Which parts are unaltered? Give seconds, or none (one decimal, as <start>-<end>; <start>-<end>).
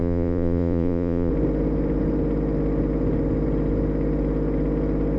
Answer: 1.3-5.2